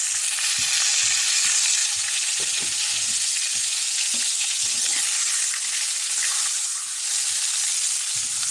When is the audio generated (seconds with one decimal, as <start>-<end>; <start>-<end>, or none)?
1.8-4.8; 6.3-7.1